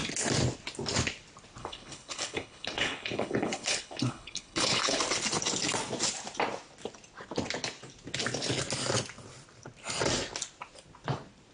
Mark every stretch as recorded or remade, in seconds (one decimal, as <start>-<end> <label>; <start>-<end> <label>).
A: 0.0-1.6 recorded; 1.6-5.0 remade; 5.0-11.5 recorded